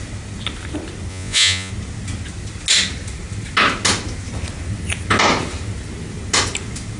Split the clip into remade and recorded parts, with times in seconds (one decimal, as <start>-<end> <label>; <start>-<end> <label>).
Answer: 0.0-1.1 recorded; 1.1-1.7 remade; 1.7-7.0 recorded